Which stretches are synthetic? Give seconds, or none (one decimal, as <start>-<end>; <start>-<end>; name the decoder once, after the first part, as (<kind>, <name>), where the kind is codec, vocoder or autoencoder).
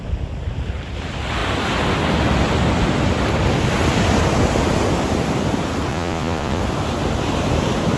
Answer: 5.9-6.6 (vocoder, Vocos)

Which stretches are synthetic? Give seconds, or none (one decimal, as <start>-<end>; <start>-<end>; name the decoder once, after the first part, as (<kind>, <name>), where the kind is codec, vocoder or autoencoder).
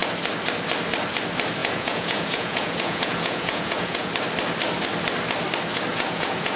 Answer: 1.6-4.1 (vocoder, Vocos); 5.9-6.6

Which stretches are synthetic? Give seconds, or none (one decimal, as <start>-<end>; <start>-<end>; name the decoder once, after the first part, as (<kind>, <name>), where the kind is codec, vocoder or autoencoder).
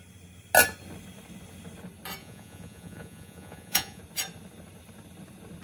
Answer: 2.2-4.0 (vocoder, Vocos)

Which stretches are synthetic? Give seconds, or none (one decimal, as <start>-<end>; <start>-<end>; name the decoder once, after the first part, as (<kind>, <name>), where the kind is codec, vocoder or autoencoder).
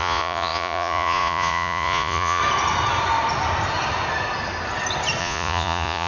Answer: 0.0-2.4 (vocoder, Vocos); 5.2-6.1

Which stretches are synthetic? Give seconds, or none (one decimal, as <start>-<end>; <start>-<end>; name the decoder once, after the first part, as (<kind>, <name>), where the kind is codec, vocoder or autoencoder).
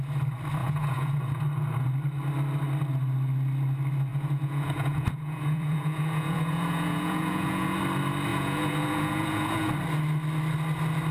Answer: 0.6-1.4 (vocoder, Vocos); 4.1-7.8; 8.3-9.7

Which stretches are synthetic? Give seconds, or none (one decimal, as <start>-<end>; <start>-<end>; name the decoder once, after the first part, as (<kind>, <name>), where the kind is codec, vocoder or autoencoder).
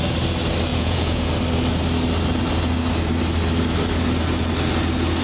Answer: 0.7-1.3 (vocoder, Vocos)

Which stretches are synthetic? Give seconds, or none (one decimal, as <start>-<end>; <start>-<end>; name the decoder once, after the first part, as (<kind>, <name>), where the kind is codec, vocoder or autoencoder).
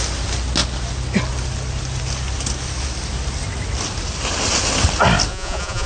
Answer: 5.3-5.9 (vocoder, Vocos)